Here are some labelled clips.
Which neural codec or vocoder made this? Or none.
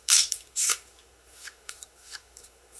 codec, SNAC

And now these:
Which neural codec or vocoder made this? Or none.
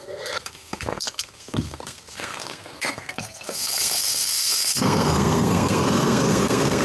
codec, SNAC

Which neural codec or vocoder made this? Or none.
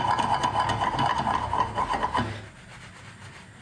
none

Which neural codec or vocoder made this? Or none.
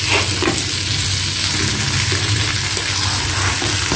none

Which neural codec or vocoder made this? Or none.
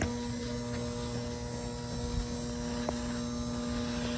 none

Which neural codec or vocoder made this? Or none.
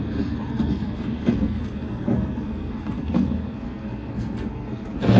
codec, SNAC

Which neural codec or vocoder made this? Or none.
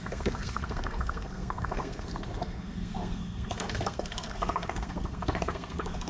codec, SNAC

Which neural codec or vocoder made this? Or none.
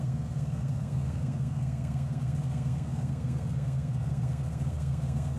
codec, SNAC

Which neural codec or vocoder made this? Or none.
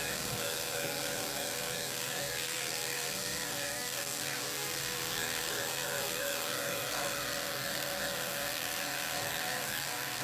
codec, SNAC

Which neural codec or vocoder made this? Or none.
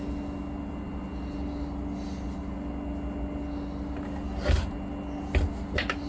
none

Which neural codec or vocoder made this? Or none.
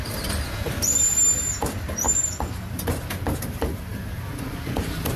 none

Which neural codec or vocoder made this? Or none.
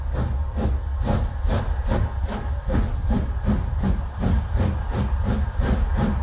none